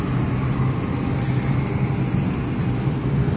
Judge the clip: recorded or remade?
recorded